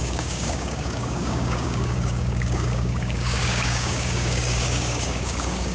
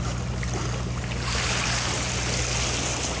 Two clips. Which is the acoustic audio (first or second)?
second